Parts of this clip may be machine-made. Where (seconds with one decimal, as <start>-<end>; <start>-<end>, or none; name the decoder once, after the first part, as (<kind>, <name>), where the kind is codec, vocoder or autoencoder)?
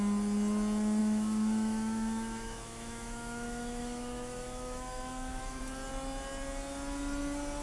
1.0-5.6 (autoencoder, DAC-VAE)